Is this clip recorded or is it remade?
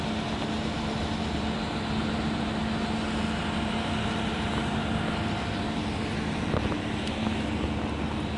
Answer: recorded